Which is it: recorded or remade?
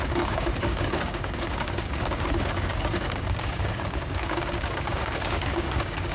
remade